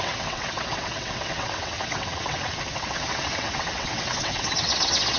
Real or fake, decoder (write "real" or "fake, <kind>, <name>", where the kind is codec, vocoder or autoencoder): fake, vocoder, WaveNeXt